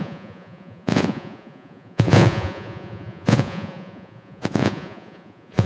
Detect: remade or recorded remade